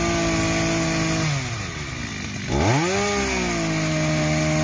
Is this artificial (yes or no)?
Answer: no